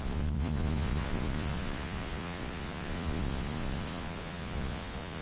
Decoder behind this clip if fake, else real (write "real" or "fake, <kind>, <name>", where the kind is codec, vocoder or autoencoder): fake, vocoder, Vocos